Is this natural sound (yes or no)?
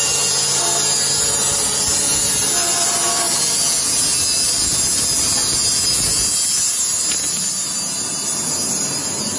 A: yes